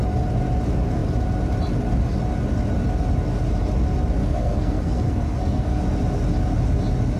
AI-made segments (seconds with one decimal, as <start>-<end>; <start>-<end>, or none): 4.2-5.8

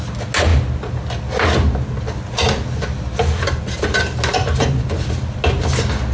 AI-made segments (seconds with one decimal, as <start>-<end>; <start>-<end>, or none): none

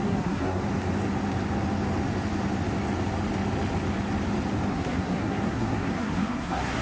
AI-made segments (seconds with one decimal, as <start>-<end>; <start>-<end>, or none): 0.0-0.6; 4.7-6.8

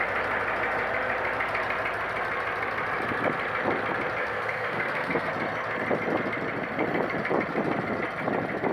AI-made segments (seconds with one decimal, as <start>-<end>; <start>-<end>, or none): 4.2-5.3